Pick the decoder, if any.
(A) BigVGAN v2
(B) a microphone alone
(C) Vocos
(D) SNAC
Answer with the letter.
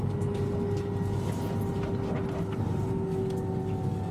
B